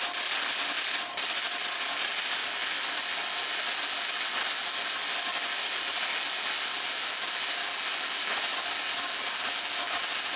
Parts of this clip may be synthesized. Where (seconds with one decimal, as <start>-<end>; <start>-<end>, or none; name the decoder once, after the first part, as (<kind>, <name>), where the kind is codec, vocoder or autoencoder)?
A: none